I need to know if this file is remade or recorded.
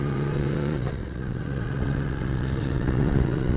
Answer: remade